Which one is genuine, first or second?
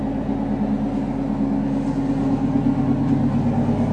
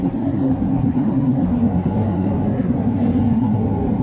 first